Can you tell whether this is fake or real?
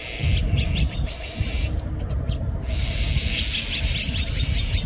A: real